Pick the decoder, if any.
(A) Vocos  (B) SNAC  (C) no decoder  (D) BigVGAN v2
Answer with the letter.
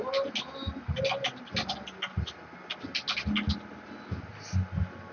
C